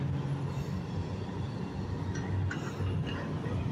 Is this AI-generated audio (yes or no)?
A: no